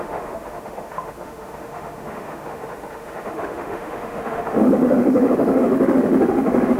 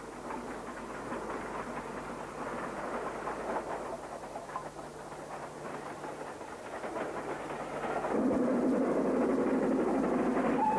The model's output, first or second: first